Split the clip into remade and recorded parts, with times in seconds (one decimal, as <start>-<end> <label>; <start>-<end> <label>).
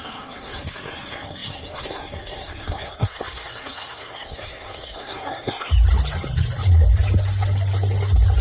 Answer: 0.0-5.7 remade; 5.7-8.4 recorded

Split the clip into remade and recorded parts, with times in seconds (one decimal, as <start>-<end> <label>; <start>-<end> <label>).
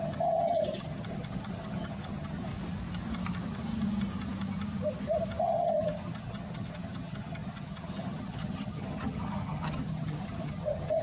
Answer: 0.0-2.5 remade; 2.5-5.4 recorded; 5.4-11.0 remade